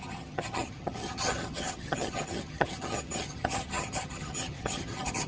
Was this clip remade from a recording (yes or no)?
yes